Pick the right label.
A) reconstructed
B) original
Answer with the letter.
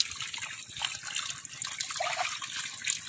B